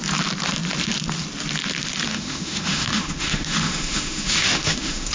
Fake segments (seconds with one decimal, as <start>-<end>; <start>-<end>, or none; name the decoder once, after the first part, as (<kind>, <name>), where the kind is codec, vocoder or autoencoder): 2.1-5.1 (autoencoder, DAC-VAE)